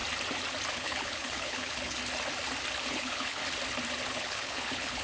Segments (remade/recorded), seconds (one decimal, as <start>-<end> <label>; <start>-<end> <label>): 0.0-0.7 recorded; 0.7-2.0 remade; 2.0-2.9 recorded; 2.9-3.4 remade; 3.4-4.1 recorded; 4.1-5.0 remade